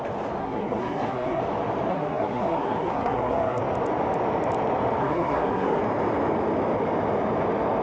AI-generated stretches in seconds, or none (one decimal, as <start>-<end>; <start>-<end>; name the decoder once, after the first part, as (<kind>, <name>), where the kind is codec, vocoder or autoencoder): 0.4-1.4 (codec, SNAC); 1.9-3.6; 5.0-5.8

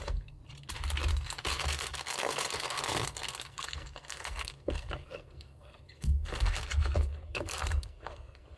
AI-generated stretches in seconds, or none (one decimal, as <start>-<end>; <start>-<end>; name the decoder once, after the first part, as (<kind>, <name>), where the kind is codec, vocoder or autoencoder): 0.0-0.4 (codec, SNAC); 1.1-8.6

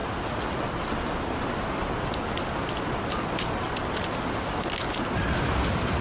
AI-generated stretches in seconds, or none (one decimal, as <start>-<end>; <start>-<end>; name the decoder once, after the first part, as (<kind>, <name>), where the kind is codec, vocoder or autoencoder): none

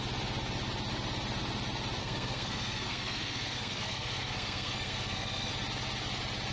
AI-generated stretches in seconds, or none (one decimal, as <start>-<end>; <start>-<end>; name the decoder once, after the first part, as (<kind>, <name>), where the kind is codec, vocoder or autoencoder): 2.0-5.5 (codec, SNAC)